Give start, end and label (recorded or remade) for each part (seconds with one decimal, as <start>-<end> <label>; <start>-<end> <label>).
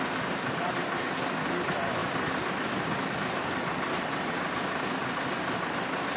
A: 0.0-6.2 recorded